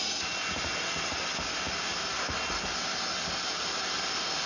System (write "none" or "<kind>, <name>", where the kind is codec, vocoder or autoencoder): none